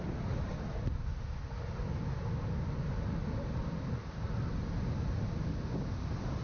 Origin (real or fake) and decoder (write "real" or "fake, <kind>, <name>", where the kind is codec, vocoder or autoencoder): real